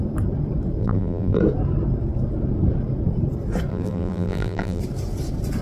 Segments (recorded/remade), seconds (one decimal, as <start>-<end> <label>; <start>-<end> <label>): 0.0-0.8 recorded; 0.8-1.4 remade; 1.4-3.7 recorded; 3.7-4.8 remade; 4.8-5.6 recorded